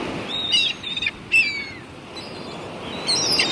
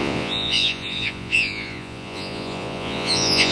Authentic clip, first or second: first